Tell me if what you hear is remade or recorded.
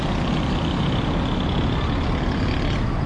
recorded